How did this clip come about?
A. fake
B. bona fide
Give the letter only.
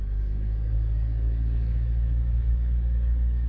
A